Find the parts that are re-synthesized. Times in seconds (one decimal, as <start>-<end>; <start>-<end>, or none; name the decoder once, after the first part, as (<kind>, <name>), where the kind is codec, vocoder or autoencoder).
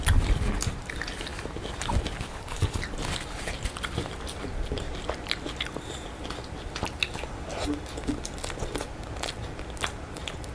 2.3-2.8 (codec, HILCodec)